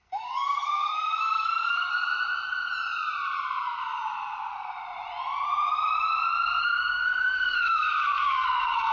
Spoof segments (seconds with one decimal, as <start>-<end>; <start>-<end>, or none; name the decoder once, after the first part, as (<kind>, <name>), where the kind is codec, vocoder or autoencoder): 0.0-1.9 (codec, SNAC); 6.6-8.9